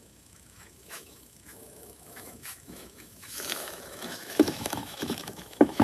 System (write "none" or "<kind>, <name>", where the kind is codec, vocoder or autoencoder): autoencoder, DAC-VAE